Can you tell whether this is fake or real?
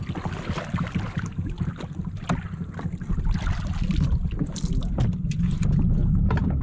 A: real